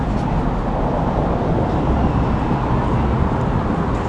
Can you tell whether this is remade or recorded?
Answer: recorded